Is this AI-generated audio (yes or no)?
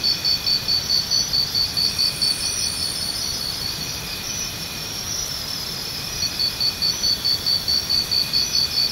no